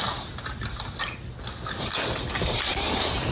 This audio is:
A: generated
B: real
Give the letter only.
B